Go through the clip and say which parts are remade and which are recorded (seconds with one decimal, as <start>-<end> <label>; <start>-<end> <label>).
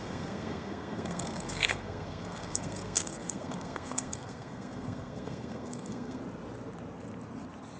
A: 0.0-6.2 remade; 6.2-7.8 recorded